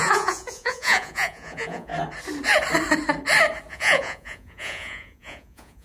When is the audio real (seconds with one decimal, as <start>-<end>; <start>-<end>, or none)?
1.9-3.7